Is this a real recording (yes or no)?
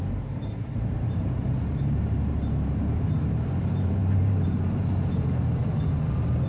no